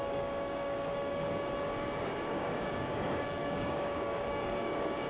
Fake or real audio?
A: fake